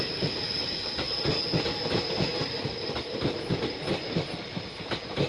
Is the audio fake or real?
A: real